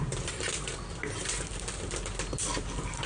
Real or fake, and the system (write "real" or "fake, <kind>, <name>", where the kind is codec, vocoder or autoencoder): fake, vocoder, BigVGAN v2